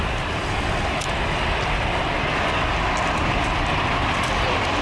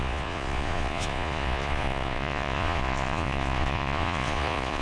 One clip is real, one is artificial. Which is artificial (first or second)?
second